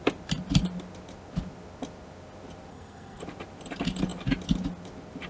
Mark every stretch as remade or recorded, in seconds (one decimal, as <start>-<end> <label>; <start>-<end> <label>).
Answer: 0.0-2.7 recorded; 2.7-3.2 remade; 3.2-5.3 recorded